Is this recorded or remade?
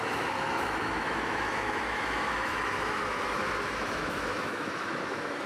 remade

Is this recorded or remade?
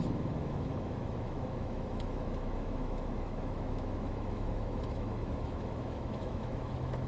remade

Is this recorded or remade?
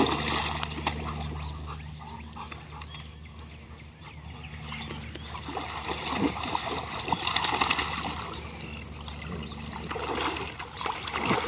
recorded